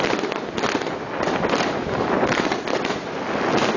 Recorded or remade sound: recorded